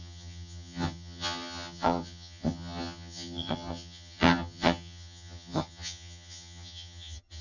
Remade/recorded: remade